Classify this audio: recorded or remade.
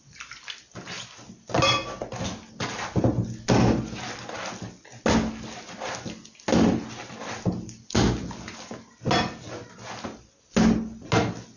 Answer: recorded